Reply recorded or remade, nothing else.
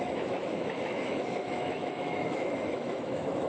remade